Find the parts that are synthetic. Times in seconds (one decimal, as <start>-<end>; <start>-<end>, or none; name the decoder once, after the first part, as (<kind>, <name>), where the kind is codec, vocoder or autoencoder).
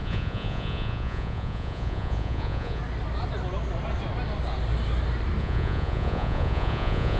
0.0-2.8 (vocoder, Vocos); 5.4-7.2